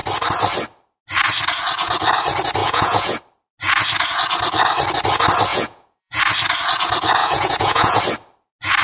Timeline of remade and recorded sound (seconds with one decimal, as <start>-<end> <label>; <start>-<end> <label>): 0.0-2.6 recorded; 2.6-3.2 remade; 3.2-5.5 recorded; 5.5-6.2 remade; 6.2-7.2 recorded; 7.2-8.0 remade; 8.0-8.8 recorded